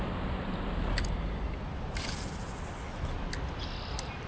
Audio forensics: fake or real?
real